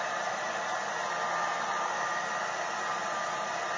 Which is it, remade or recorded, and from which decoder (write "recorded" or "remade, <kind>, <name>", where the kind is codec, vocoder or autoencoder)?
recorded